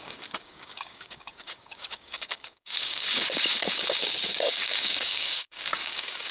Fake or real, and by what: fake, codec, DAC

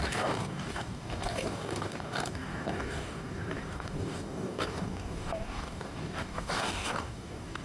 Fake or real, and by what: fake, codec, DAC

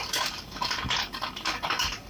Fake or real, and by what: fake, codec, DAC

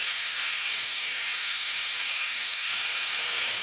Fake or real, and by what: fake, codec, DAC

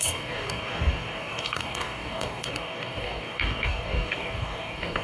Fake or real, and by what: fake, codec, DAC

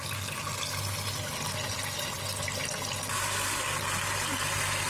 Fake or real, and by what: real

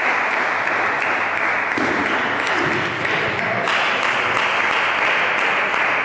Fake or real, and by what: real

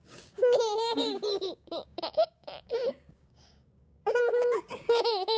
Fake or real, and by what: fake, codec, DAC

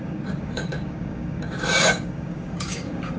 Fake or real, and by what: fake, codec, DAC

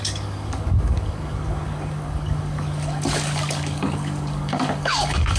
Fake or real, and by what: fake, codec, DAC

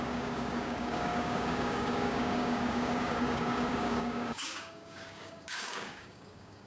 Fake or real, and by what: fake, codec, DAC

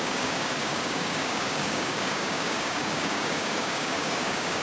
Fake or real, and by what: fake, codec, DAC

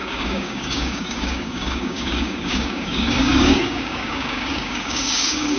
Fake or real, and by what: fake, codec, DAC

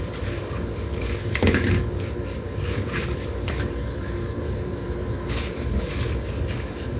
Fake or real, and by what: fake, codec, DAC